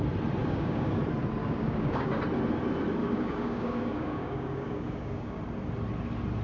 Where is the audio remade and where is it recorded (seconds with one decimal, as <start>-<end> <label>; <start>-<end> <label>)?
0.0-0.4 recorded; 0.4-1.0 remade; 1.0-1.4 recorded; 1.4-2.2 remade; 2.2-3.0 recorded; 3.0-5.4 remade; 5.4-6.4 recorded